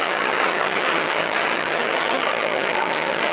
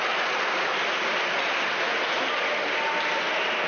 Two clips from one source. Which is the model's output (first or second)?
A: first